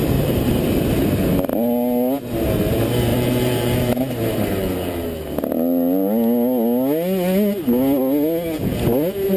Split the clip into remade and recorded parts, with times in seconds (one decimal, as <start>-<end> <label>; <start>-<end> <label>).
0.0-0.5 remade; 0.5-3.1 recorded; 3.1-5.3 remade; 5.3-9.4 recorded

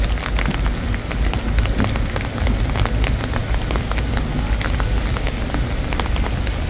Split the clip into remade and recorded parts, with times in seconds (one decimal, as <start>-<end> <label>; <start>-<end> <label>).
0.0-6.7 recorded

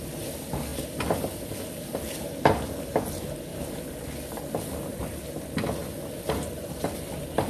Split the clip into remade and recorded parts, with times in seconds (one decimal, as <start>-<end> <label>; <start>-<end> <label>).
0.0-0.7 recorded; 0.7-1.6 remade; 1.6-3.5 recorded; 3.5-5.2 remade; 5.2-5.8 recorded; 5.8-7.5 remade

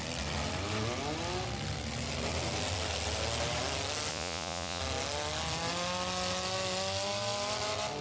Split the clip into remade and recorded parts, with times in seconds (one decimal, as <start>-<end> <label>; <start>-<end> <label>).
0.0-4.1 recorded; 4.1-4.8 remade; 4.8-8.0 recorded

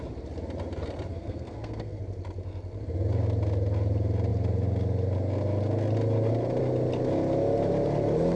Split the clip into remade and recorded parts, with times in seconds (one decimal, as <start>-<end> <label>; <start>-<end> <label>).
0.0-1.1 recorded; 1.1-2.0 remade; 2.0-8.4 recorded

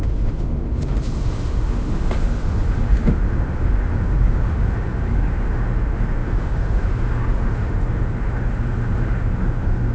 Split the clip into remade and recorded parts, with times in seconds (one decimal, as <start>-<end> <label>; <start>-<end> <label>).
0.0-9.9 remade

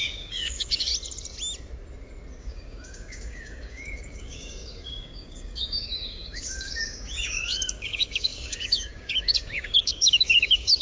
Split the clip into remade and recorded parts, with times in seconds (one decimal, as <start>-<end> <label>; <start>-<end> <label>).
0.0-0.9 remade; 0.9-2.4 recorded; 2.4-10.8 remade

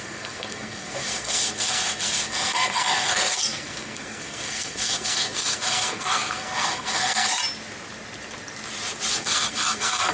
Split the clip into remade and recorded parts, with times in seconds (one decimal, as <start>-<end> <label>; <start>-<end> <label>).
0.0-7.4 remade; 7.4-9.1 recorded; 9.1-10.1 remade